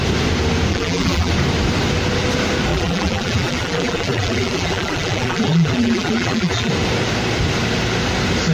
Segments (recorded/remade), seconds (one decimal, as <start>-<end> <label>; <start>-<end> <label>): 0.0-0.7 recorded; 0.7-1.3 remade; 1.3-2.7 recorded; 2.7-6.7 remade; 6.7-8.5 recorded